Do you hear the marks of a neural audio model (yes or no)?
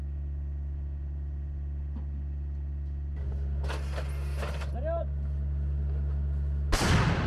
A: no